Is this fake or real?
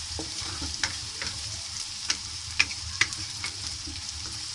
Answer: fake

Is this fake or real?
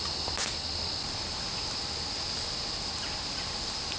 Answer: real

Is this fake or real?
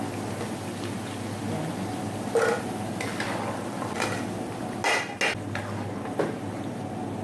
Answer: real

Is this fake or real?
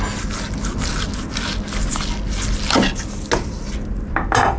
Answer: real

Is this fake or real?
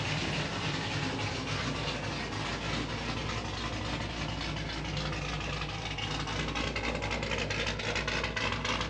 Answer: real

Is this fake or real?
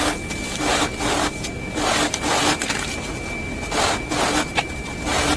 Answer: real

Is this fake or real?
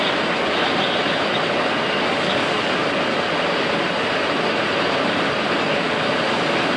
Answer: fake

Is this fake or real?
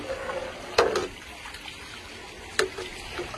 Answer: real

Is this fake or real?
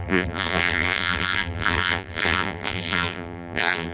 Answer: fake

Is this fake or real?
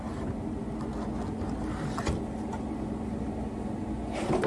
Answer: real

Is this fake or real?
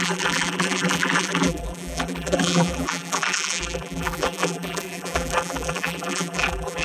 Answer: fake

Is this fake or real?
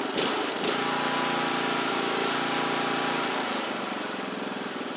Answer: fake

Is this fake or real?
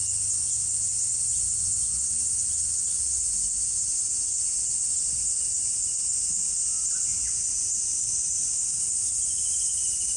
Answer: real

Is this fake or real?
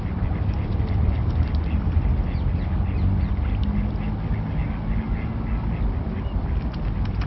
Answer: real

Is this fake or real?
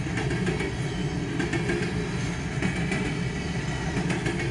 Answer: real